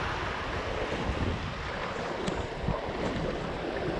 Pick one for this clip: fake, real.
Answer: real